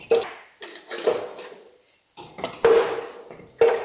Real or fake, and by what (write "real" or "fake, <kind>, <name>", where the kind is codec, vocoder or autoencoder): real